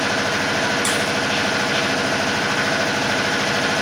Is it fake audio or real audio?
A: real